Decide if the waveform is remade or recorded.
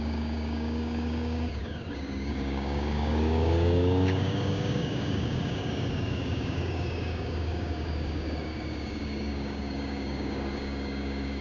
remade